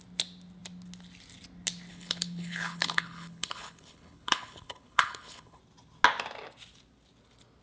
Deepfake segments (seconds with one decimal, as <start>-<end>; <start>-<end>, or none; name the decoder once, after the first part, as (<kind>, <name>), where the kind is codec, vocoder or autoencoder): 1.9-5.6 (codec, HILCodec)